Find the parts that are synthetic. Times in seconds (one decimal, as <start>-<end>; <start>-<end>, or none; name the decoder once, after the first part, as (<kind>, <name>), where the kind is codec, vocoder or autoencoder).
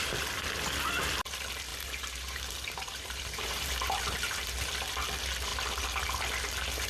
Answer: 1.7-4.7 (vocoder, BigVGAN v2)